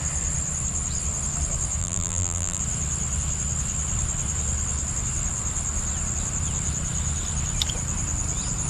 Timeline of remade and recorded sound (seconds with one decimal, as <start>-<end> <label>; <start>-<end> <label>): 0.0-1.8 recorded; 1.8-2.6 remade; 2.6-8.7 recorded

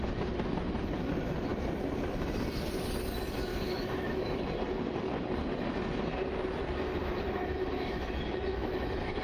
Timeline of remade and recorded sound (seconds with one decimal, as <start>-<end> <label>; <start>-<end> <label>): 0.0-3.5 recorded; 3.5-4.4 remade; 4.4-7.0 recorded; 7.0-9.2 remade

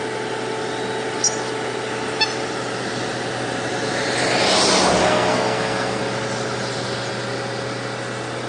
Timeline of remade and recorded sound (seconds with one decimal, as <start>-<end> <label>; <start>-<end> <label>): 0.0-5.0 recorded; 5.0-6.0 remade; 6.0-8.5 recorded

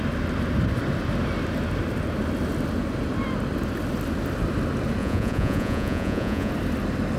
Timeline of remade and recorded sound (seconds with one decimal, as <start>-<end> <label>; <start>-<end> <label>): 0.0-5.0 recorded; 5.0-6.5 remade; 6.5-7.2 recorded